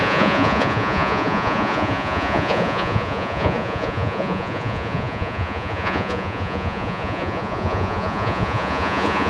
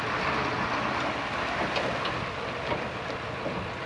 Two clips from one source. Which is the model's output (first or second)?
first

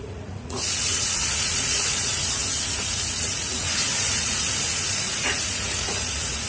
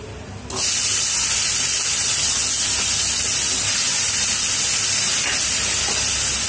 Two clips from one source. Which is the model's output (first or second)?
first